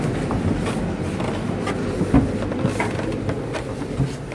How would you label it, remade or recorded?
recorded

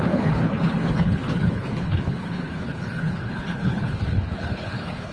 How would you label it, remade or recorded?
remade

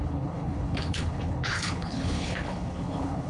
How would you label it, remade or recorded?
remade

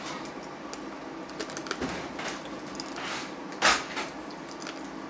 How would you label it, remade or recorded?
recorded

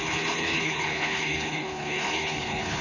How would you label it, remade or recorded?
remade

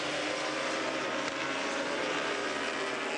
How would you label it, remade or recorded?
recorded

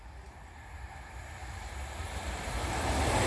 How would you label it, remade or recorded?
recorded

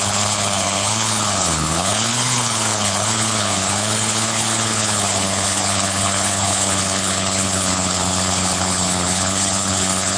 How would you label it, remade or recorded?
remade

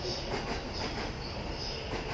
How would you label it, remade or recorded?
recorded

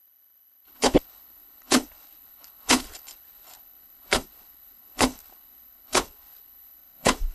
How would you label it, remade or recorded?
remade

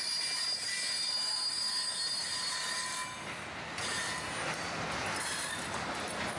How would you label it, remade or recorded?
recorded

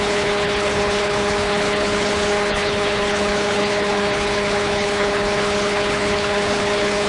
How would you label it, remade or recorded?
remade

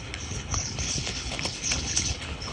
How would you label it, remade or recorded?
remade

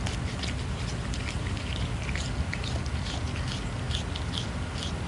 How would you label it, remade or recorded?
recorded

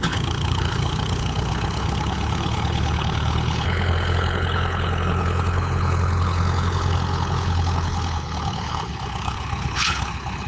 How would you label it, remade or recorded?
remade